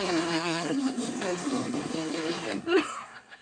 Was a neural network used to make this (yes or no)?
yes